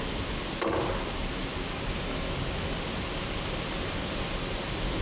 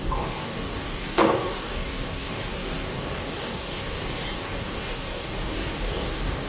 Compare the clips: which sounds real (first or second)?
first